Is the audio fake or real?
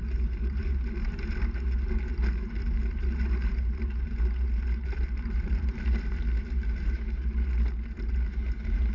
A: fake